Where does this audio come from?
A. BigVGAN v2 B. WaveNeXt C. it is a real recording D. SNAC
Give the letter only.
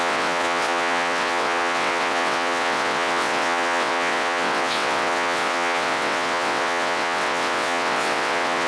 B